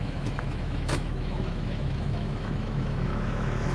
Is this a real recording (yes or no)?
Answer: no